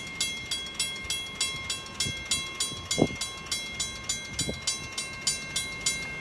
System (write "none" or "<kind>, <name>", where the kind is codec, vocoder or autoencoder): none